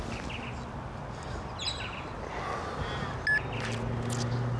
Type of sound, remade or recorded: recorded